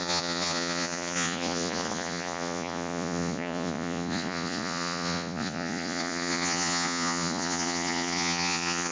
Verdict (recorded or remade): remade